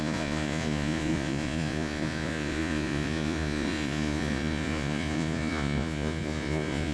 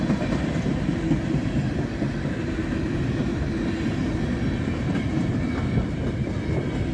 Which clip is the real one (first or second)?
second